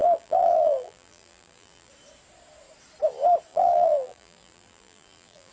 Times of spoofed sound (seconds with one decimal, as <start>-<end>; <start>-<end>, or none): 0.0-1.9; 3.5-5.5